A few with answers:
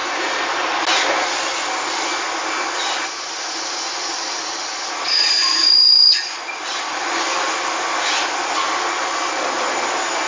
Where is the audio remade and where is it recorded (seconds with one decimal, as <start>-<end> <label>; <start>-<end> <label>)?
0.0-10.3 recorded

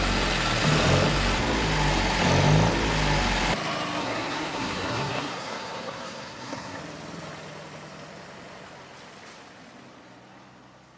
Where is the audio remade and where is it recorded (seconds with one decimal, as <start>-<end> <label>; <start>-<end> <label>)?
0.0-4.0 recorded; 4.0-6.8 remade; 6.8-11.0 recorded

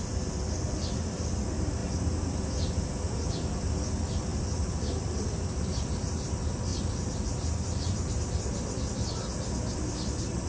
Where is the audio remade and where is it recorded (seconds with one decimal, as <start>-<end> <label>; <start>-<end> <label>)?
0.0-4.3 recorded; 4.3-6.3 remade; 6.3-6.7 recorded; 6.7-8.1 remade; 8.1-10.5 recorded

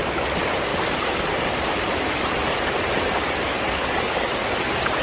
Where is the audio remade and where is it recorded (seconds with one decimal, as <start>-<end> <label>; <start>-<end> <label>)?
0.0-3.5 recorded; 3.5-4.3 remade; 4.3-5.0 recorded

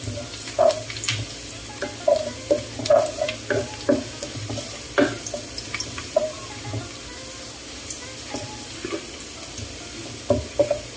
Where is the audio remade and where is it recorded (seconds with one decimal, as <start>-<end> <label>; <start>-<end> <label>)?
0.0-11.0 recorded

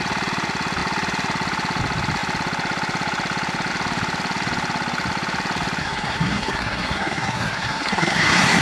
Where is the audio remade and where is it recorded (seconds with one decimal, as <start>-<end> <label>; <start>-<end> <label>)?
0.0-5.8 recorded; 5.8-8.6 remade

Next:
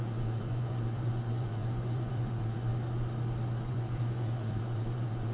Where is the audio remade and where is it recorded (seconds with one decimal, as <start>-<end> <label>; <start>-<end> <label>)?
0.0-2.7 remade; 2.7-3.7 recorded; 3.7-5.3 remade